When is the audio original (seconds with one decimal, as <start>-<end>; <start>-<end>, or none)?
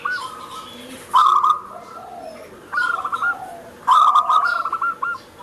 none